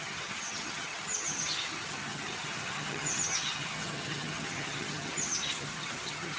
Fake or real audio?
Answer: fake